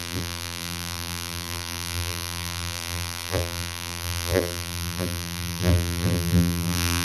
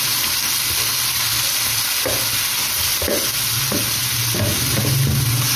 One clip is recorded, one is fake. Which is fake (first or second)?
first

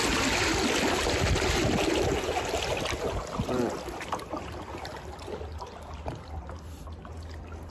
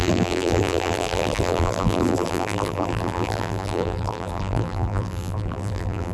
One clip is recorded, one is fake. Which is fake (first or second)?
second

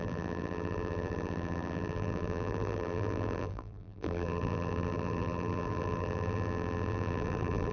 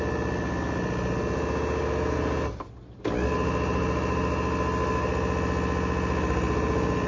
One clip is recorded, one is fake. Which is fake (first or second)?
first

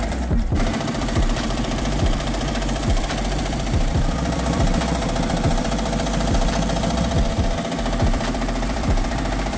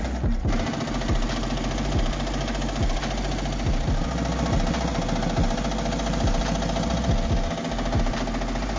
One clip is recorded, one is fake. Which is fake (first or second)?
first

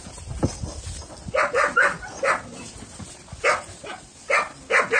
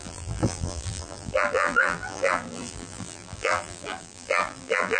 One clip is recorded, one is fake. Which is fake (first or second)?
second